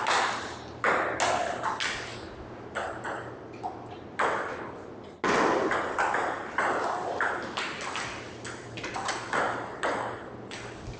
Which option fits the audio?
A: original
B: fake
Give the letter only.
A